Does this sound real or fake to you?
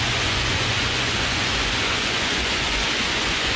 fake